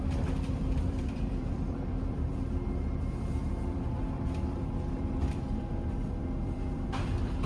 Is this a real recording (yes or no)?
no